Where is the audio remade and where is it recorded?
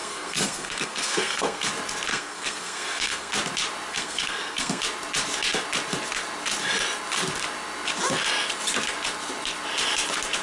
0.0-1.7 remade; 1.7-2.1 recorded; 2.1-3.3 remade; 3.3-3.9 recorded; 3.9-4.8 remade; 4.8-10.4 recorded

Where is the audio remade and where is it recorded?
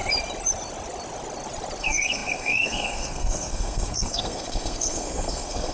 0.0-1.8 recorded; 1.8-5.7 remade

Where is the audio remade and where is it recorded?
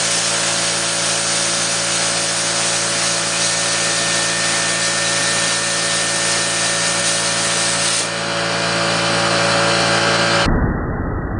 0.0-11.4 recorded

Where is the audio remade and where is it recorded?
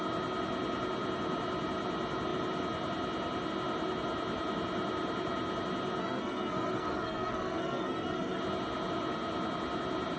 0.0-6.0 recorded; 6.0-8.4 remade; 8.4-10.2 recorded